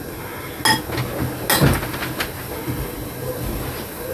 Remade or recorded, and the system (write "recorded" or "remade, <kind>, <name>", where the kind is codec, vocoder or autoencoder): recorded